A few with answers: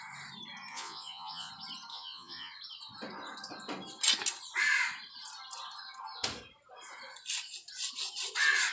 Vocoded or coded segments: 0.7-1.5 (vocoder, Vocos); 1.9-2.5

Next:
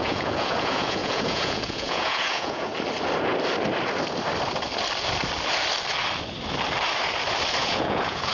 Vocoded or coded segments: 0.0-2.7 (vocoder, Vocos); 7.6-8.3

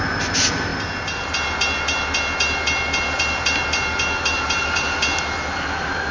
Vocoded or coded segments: none

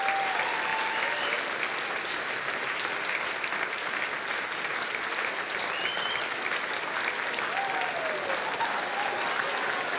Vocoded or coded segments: none

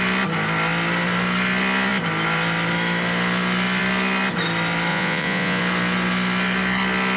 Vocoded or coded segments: 4.9-5.6 (vocoder, Vocos)

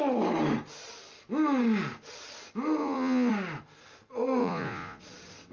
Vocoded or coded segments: 2.8-3.3 (vocoder, Vocos); 4.4-5.0

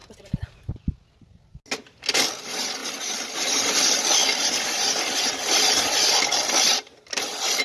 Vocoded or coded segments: none

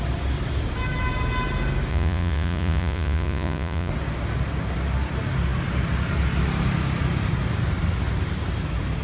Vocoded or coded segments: 1.9-3.9 (vocoder, Vocos)